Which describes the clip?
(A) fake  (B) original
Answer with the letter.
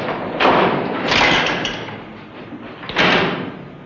B